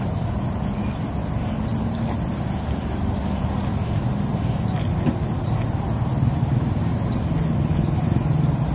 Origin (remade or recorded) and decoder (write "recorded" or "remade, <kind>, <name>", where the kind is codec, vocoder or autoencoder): recorded